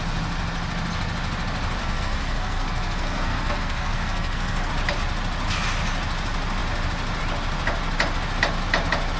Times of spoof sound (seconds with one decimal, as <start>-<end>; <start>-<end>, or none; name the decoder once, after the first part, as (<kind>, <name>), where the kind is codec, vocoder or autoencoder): 1.8-4.7 (codec, SNAC)